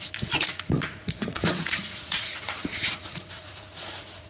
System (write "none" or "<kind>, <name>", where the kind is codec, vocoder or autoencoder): vocoder, Vocos